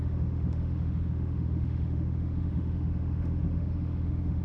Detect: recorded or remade remade